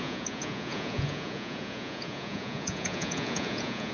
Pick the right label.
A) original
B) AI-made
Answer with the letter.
B